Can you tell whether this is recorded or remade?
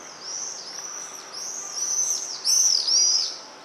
recorded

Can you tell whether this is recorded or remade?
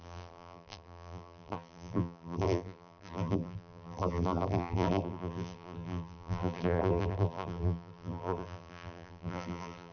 remade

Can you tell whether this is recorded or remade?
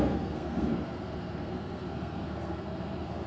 remade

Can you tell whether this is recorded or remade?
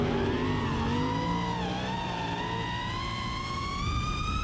recorded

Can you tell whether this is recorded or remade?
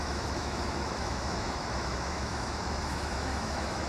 remade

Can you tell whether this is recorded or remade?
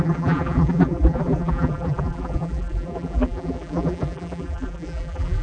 remade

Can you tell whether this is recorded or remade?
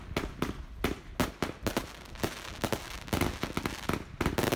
recorded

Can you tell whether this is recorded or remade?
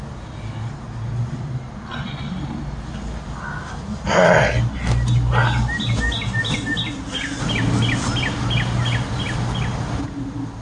recorded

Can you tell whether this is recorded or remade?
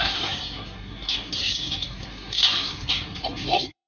remade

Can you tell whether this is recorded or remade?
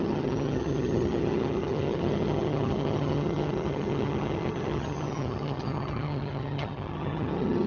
remade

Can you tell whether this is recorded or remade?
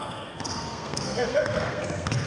remade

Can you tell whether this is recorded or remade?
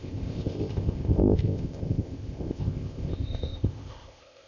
remade